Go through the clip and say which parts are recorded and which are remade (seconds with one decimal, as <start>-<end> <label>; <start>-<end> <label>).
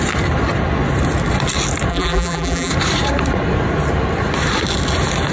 0.0-1.9 recorded; 1.9-2.7 remade; 2.7-5.3 recorded